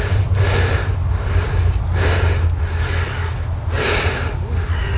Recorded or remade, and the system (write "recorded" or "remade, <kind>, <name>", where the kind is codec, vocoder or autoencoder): recorded